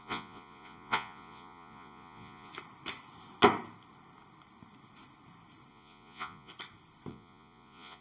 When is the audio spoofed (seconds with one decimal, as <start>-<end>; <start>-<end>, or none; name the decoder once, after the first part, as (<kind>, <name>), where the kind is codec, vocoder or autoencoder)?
0.0-2.5 (vocoder, Vocos); 5.7-6.5; 7.1-8.0